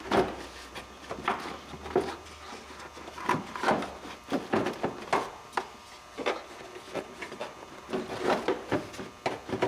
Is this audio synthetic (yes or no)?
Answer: no